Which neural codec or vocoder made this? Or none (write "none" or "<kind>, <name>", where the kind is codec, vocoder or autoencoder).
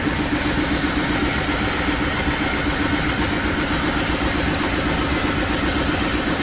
none